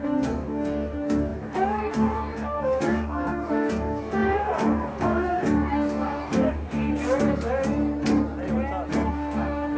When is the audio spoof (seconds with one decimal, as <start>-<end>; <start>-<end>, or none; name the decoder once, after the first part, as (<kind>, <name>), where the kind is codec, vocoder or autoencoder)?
0.0-6.9 (codec, DAC); 9.1-9.8